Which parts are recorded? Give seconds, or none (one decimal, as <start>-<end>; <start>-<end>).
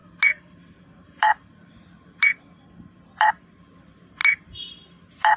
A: 0.0-5.4